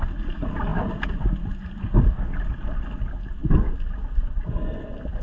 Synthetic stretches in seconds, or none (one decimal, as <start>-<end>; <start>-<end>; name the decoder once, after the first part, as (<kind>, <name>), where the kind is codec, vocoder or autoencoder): none